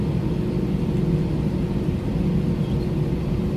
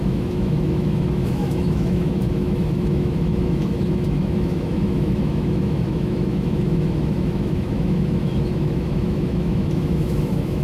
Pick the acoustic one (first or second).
first